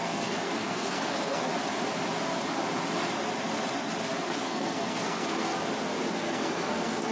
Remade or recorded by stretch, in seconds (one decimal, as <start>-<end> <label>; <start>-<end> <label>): 0.0-1.5 remade; 1.5-4.4 recorded; 4.4-5.5 remade; 5.5-6.1 recorded; 6.1-7.1 remade